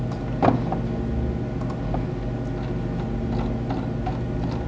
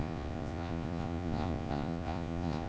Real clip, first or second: first